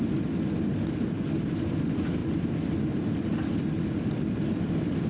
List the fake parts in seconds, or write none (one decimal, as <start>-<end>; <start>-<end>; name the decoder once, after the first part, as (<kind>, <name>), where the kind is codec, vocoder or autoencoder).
none